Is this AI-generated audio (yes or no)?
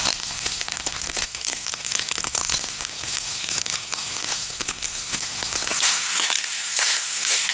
yes